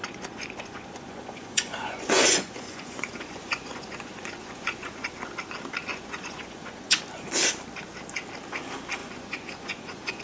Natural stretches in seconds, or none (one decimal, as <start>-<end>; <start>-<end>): 5.1-5.9; 7.0-9.0